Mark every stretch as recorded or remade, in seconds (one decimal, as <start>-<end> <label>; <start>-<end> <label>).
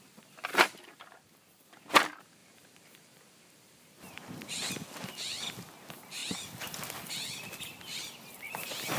0.0-0.5 recorded; 0.5-1.9 remade; 1.9-2.4 recorded; 2.4-4.7 remade; 4.7-9.0 recorded